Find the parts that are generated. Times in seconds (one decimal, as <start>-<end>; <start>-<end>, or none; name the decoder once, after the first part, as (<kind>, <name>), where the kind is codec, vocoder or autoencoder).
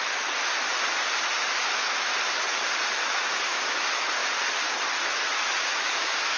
0.0-0.5 (autoencoder, DAC-VAE); 1.5-2.1; 3.0-4.2; 5.0-6.4